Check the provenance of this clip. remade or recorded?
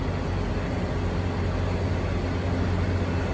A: recorded